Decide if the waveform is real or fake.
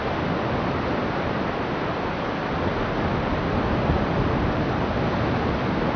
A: real